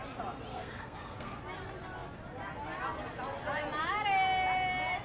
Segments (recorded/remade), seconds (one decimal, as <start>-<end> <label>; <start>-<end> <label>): 0.0-0.5 recorded; 0.5-1.4 remade; 1.4-5.0 recorded